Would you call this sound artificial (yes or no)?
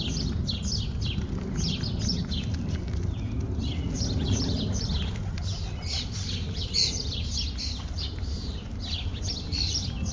no